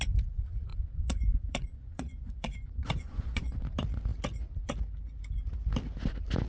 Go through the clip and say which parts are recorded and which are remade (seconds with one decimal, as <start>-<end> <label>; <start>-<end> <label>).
0.0-0.7 recorded; 0.7-3.6 remade; 3.6-6.5 recorded